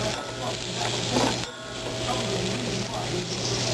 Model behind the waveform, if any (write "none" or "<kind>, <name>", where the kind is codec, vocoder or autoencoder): none